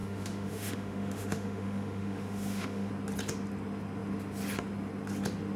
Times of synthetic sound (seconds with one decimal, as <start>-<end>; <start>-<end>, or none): 0.0-2.9